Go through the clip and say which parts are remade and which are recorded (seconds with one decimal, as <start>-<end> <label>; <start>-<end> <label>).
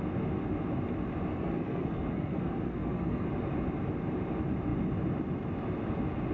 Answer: 0.0-1.3 recorded; 1.3-3.3 remade; 3.3-6.3 recorded